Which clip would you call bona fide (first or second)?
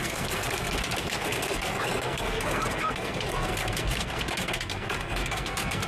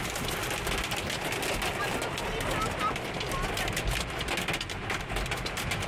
second